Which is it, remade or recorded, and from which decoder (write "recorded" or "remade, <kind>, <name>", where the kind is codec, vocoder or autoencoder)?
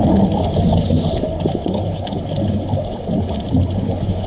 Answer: remade, codec, HILCodec